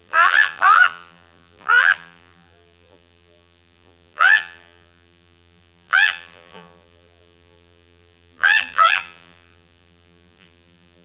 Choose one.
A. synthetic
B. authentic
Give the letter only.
A